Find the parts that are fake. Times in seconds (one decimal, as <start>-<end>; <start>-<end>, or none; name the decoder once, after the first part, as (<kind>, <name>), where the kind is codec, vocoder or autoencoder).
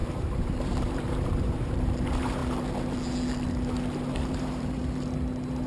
0.0-2.4 (vocoder, BigVGAN v2); 4.1-4.8